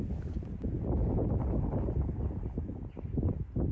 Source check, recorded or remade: recorded